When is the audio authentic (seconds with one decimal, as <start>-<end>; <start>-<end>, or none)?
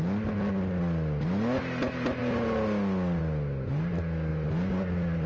0.0-5.3